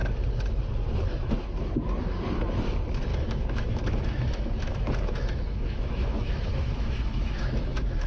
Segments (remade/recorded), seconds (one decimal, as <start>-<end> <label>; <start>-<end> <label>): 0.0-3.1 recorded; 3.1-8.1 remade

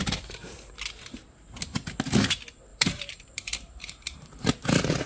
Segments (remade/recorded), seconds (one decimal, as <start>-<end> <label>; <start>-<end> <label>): 0.0-2.7 recorded; 2.7-4.5 remade; 4.5-5.1 recorded

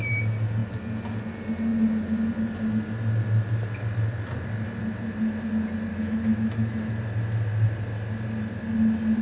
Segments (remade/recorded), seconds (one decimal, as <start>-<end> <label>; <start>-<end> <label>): 0.0-5.9 recorded; 5.9-6.9 remade; 6.9-9.2 recorded